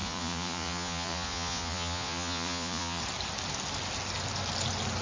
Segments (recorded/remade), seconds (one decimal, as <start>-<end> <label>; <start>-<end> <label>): 0.0-3.0 remade; 3.0-5.0 recorded